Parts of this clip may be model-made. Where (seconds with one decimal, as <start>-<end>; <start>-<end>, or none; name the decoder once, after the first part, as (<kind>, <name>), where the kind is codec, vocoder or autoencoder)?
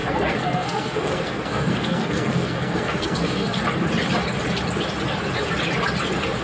0.0-3.6 (codec, SNAC)